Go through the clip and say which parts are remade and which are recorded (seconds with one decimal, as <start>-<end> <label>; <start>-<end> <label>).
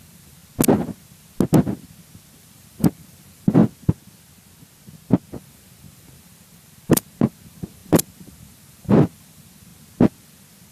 0.0-0.4 remade; 0.4-2.4 recorded; 2.4-3.6 remade; 3.6-5.4 recorded; 5.4-9.7 remade; 9.7-10.7 recorded